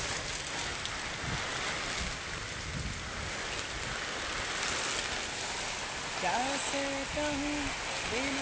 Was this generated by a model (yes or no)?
no